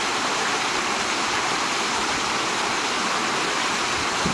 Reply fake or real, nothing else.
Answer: real